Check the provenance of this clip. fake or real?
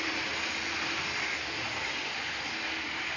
real